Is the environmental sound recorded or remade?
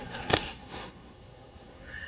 remade